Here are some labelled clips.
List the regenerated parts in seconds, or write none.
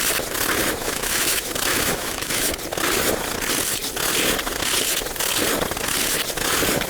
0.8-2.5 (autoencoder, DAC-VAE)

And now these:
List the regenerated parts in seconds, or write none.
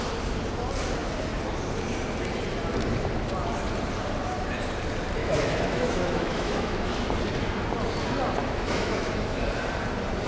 5.2-7.1 (autoencoder, DAC-VAE); 8.4-9.4